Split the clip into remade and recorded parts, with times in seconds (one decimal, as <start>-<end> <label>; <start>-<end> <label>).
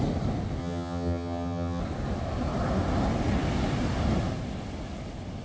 0.0-0.6 recorded; 0.6-1.8 remade; 1.8-5.4 recorded